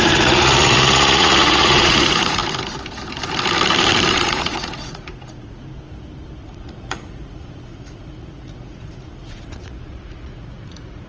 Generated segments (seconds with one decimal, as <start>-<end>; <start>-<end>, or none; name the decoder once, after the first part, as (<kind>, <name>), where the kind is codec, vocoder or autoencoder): 0.0-2.4 (vocoder, Vocos); 4.1-5.6; 6.4-11.1